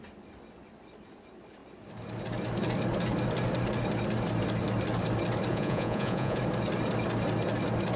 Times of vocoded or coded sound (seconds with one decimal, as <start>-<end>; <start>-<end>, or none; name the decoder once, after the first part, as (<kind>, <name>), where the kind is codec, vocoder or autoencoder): 5.5-6.4 (vocoder, Vocos)